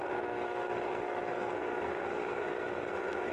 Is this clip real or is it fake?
fake